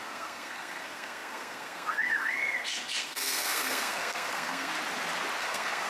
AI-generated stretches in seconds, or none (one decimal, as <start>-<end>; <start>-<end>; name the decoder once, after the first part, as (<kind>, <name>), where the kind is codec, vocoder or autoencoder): 0.0-4.7 (codec, SNAC); 5.4-5.9